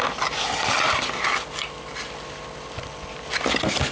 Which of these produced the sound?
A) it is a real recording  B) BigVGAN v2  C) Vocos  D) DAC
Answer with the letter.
A